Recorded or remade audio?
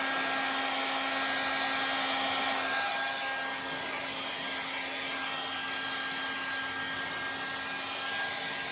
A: recorded